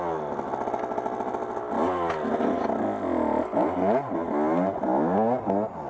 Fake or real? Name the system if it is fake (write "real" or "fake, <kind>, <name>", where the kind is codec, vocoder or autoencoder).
real